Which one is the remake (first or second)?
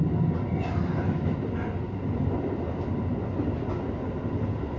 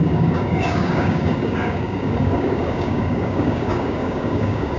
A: second